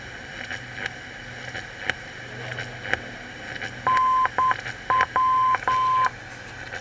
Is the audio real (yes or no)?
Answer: yes